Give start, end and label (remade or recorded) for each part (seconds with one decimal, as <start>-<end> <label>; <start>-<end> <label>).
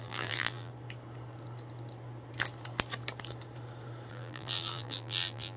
0.0-0.7 remade; 0.7-4.1 recorded; 4.1-5.6 remade